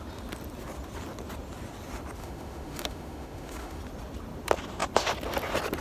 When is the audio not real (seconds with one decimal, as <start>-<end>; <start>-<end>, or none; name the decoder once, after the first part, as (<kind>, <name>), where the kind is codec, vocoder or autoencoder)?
2.2-3.8 (autoencoder, DAC-VAE)